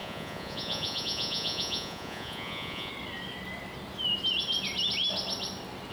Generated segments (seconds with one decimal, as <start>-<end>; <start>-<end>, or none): 0.0-2.9